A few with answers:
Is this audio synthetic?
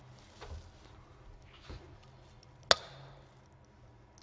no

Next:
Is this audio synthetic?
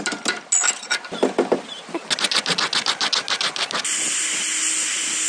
no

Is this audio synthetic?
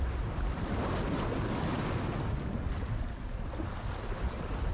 no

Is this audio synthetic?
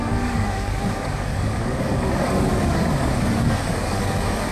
yes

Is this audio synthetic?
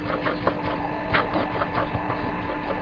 no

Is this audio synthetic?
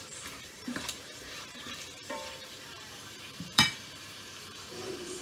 yes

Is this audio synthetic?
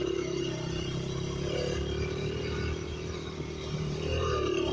yes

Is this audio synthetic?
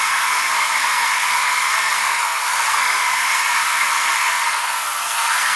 yes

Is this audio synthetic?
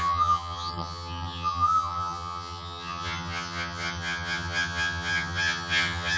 yes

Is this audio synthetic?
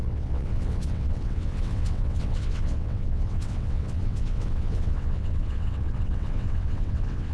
yes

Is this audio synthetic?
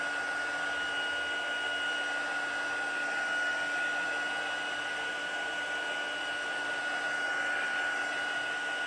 no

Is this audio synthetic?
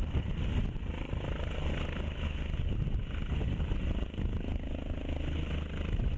no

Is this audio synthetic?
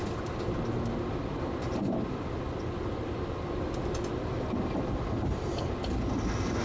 no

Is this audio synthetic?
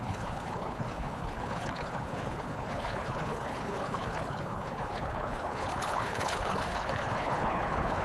yes